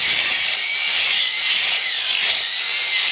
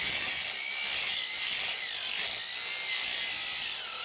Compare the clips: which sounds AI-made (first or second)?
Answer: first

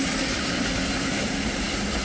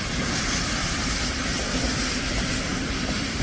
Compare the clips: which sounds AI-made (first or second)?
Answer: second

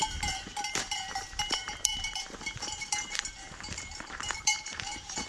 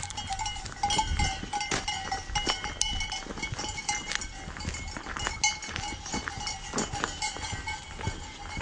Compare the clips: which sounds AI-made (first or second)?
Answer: first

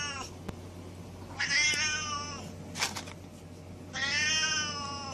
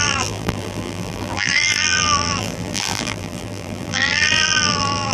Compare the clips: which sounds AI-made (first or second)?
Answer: second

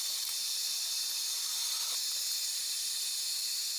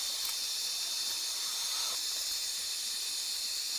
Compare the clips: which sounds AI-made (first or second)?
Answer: first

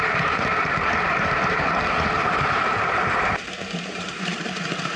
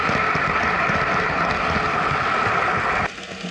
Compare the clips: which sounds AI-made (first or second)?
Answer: first